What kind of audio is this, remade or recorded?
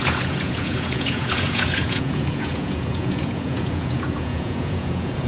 remade